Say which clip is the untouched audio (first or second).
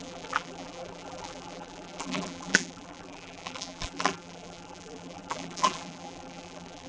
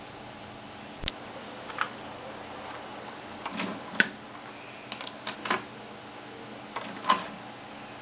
second